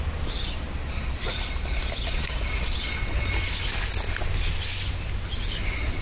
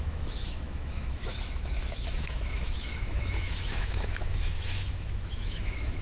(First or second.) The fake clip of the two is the second